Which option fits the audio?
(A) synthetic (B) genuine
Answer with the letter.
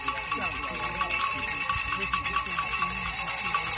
B